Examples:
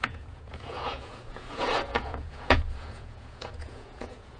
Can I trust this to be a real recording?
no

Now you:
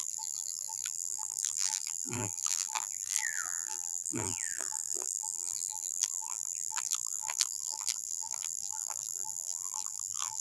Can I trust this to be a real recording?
no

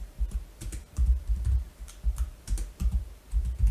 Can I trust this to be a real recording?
no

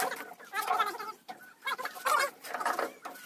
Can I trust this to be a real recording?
yes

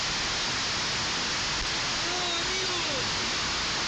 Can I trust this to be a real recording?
yes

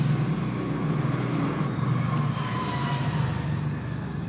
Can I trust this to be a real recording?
yes